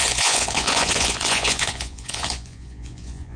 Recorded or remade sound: remade